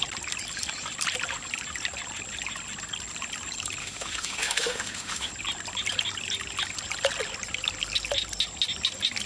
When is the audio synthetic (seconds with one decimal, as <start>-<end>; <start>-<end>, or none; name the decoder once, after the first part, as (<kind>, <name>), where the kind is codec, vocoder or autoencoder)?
3.8-5.3 (autoencoder, DAC-VAE)